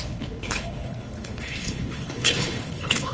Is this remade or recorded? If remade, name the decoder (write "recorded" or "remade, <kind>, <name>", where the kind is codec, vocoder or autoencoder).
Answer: remade, codec, HILCodec